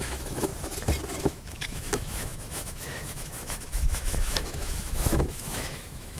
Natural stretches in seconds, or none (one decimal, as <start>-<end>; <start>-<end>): 0.5-1.2